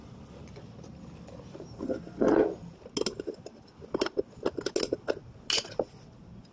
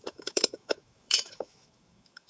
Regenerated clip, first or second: second